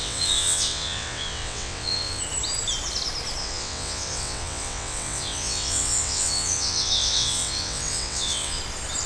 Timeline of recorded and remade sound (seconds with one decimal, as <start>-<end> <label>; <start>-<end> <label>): 0.0-2.2 remade; 2.2-3.4 recorded; 3.4-8.6 remade; 8.6-9.1 recorded